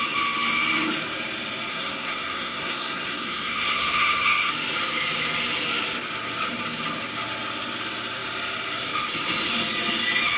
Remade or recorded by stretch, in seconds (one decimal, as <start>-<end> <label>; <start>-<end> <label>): 0.0-1.7 recorded; 1.7-4.5 remade; 4.5-10.4 recorded